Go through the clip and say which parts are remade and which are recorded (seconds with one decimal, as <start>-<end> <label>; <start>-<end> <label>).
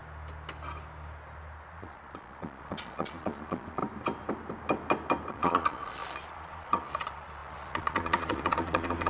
0.0-1.7 recorded; 1.7-3.8 remade; 3.8-5.3 recorded; 5.3-9.1 remade